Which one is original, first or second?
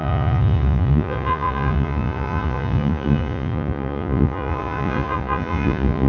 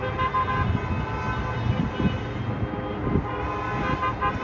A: second